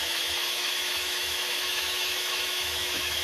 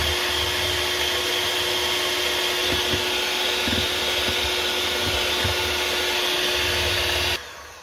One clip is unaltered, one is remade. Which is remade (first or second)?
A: first